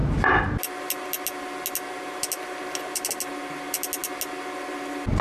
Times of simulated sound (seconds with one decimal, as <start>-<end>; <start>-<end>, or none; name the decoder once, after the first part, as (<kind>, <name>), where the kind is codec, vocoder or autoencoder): none